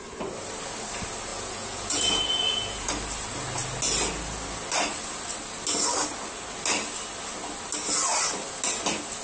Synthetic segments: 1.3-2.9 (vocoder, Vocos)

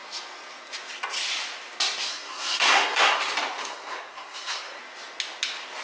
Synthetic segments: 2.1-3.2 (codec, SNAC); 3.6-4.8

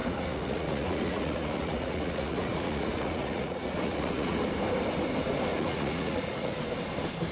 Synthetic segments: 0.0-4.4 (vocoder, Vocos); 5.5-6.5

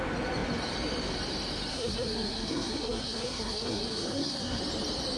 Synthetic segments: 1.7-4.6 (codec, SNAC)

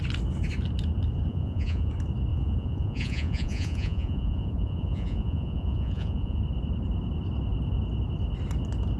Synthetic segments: 1.3-1.9 (vocoder, Vocos); 2.3-6.4